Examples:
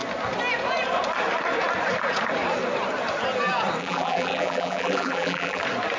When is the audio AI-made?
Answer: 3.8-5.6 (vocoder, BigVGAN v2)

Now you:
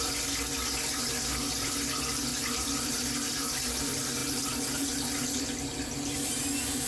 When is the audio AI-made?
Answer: 2.3-2.9 (vocoder, BigVGAN v2)